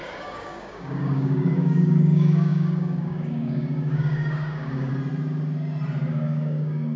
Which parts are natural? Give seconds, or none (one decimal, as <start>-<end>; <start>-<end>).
4.9-6.1